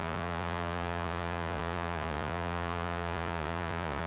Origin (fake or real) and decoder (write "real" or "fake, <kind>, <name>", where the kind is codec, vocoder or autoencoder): fake, vocoder, Vocos